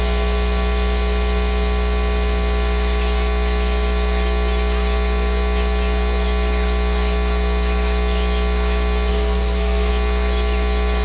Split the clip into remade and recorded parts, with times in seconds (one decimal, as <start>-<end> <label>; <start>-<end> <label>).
0.0-9.1 recorded; 9.1-9.9 remade; 9.9-11.0 recorded